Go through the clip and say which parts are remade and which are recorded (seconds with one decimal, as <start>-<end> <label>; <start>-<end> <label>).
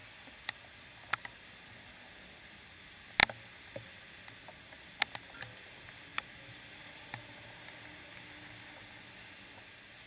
0.0-10.1 recorded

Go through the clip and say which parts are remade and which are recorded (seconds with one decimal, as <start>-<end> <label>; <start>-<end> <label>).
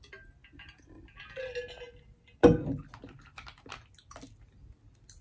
0.0-5.2 recorded